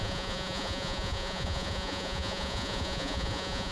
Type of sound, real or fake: fake